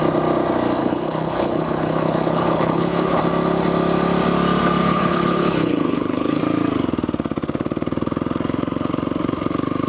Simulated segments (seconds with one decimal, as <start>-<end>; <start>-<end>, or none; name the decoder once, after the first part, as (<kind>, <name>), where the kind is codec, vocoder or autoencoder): 0.8-3.2 (codec, HILCodec); 4.8-6.4